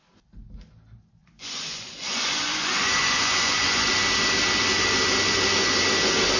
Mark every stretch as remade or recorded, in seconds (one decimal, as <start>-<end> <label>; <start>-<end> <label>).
0.0-1.2 recorded; 1.2-3.9 remade; 3.9-6.4 recorded